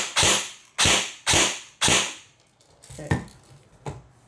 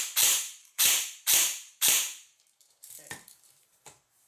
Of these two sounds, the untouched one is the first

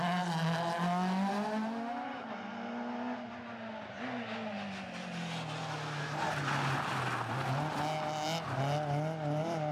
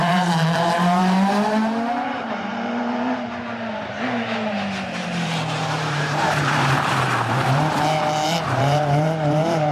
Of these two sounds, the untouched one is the first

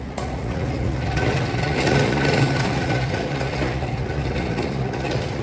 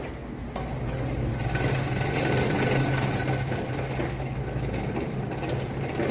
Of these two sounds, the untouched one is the second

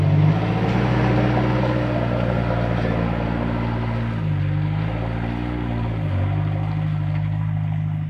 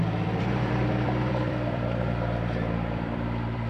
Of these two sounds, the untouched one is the first